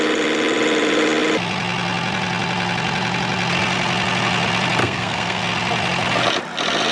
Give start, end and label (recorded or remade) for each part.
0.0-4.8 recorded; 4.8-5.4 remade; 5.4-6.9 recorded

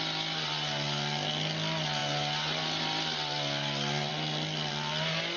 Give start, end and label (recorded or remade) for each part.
0.0-5.4 recorded

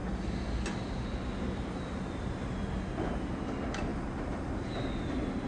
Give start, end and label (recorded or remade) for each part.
0.0-5.5 recorded

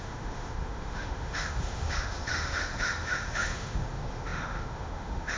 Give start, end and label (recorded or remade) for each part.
0.0-5.4 remade

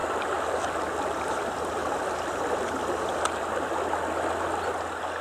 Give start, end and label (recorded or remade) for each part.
0.0-5.2 recorded

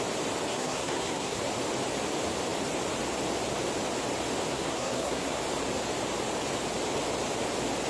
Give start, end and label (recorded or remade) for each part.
0.0-0.5 recorded; 0.5-1.4 remade; 1.4-4.5 recorded; 4.5-5.4 remade; 5.4-7.9 recorded

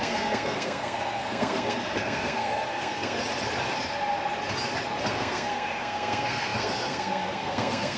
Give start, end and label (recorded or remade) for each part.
0.0-3.2 remade; 3.2-5.0 recorded; 5.0-8.0 remade

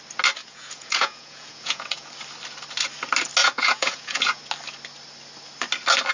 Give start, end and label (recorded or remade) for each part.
0.0-0.4 recorded; 0.4-2.1 remade; 2.1-3.4 recorded; 3.4-4.4 remade; 4.4-6.1 recorded